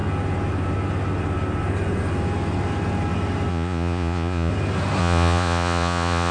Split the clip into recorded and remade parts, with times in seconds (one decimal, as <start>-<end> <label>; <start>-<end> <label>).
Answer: 0.0-3.5 recorded; 3.5-4.5 remade; 4.5-5.0 recorded; 5.0-6.3 remade